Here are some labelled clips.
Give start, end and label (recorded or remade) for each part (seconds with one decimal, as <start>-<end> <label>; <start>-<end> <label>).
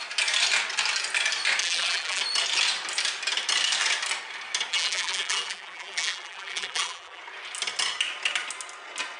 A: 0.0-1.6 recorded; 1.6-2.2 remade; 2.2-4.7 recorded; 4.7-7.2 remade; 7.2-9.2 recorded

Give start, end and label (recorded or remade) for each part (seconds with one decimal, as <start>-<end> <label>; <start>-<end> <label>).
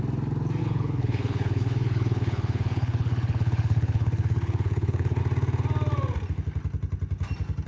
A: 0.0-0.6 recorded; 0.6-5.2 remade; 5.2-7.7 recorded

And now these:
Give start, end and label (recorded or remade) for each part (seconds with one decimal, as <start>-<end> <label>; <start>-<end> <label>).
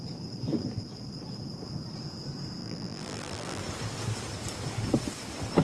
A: 0.0-2.6 recorded; 2.6-3.6 remade; 3.6-5.6 recorded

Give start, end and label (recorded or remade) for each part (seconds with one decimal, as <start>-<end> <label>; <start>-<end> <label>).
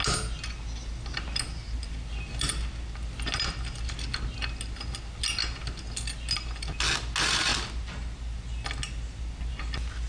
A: 0.0-10.1 recorded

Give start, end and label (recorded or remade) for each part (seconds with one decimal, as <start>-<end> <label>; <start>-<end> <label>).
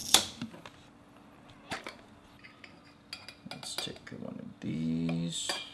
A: 0.0-5.7 recorded